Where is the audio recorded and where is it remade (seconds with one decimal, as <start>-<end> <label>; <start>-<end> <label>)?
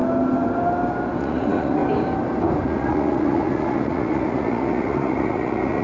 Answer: 0.0-1.2 recorded; 1.2-1.8 remade; 1.8-2.6 recorded; 2.6-5.8 remade